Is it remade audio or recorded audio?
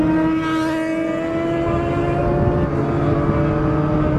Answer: recorded